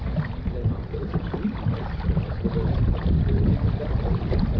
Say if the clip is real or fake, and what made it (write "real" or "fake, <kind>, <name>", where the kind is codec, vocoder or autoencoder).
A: fake, vocoder, BigVGAN v2